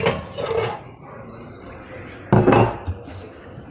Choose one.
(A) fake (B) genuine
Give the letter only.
B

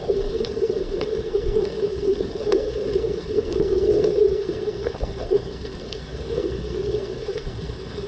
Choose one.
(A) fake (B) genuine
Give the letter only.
A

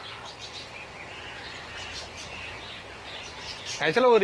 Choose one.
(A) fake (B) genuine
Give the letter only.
A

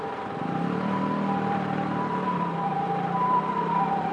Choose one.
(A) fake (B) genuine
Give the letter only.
A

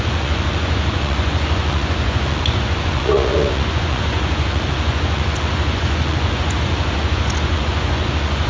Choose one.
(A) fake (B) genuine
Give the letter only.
A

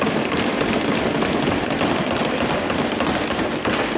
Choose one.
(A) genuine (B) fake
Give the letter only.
A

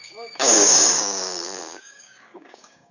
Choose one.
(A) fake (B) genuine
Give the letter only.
A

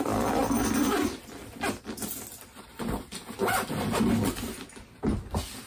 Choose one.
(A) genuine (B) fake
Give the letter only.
A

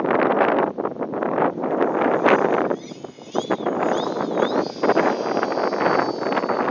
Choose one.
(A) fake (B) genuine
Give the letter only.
B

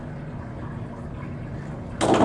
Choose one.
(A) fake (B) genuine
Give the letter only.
B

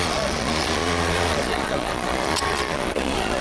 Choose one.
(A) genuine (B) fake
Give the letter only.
B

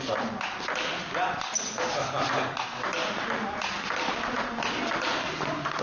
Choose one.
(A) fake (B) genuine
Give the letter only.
B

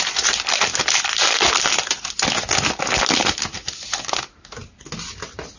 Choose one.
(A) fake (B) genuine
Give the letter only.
B